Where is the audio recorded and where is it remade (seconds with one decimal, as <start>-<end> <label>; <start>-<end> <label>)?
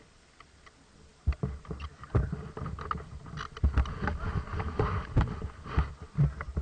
0.0-6.6 recorded